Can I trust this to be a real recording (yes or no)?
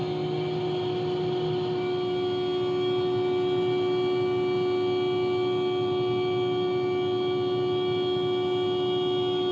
yes